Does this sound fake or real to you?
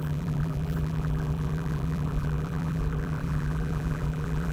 fake